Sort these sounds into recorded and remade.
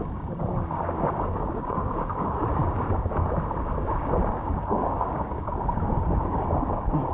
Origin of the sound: remade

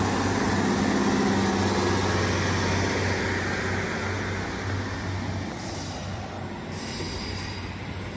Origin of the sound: recorded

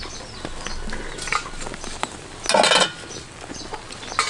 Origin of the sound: recorded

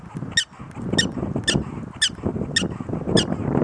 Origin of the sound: recorded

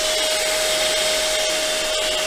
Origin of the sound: recorded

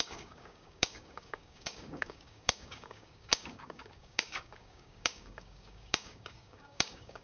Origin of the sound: remade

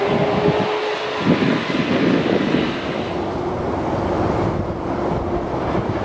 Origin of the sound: recorded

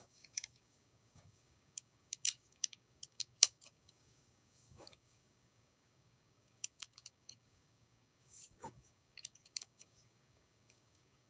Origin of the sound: remade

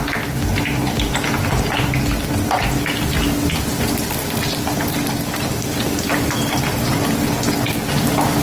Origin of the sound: recorded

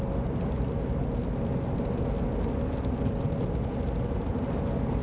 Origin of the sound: recorded